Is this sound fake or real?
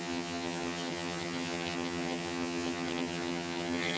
fake